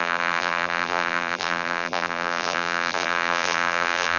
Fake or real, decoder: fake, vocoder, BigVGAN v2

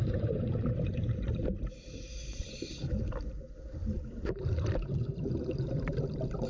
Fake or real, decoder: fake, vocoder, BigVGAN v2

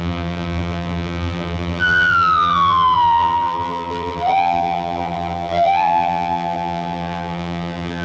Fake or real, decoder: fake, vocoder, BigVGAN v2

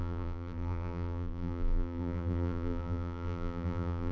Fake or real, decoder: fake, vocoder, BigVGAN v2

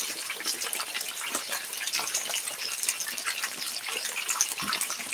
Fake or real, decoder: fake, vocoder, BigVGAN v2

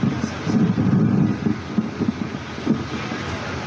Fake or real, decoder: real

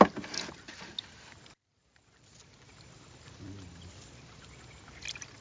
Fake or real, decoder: fake, vocoder, BigVGAN v2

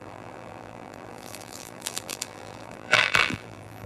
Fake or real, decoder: fake, vocoder, BigVGAN v2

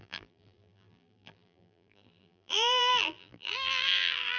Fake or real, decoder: fake, vocoder, BigVGAN v2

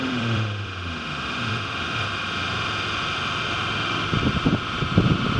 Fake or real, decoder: fake, vocoder, BigVGAN v2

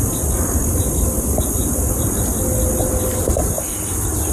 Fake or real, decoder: real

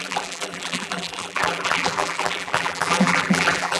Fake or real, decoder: fake, vocoder, BigVGAN v2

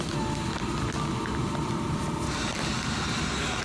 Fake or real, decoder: real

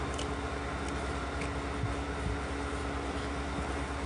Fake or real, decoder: real